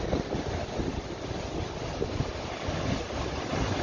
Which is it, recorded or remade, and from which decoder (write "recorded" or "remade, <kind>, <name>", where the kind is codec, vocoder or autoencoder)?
recorded